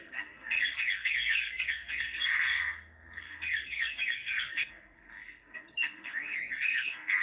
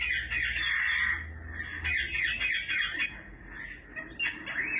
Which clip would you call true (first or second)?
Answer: second